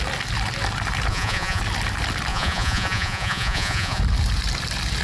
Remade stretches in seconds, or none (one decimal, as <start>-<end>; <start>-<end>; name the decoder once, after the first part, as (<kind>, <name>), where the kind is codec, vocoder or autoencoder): 1.1-1.6 (vocoder, Vocos); 2.3-4.0